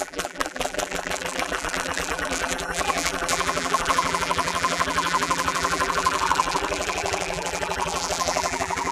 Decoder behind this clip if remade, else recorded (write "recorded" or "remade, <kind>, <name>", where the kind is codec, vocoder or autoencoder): remade, vocoder, BigVGAN v2